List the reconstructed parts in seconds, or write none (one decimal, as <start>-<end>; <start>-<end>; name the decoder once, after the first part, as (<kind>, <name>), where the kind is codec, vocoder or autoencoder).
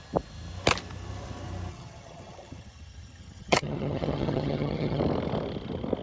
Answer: 1.7-5.0 (vocoder, HiFi-GAN)